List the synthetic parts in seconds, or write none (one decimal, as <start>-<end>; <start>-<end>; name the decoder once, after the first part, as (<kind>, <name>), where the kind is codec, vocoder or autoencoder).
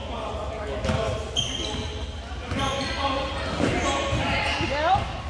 none